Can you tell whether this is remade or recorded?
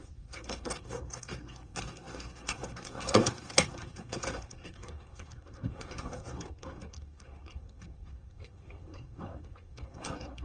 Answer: remade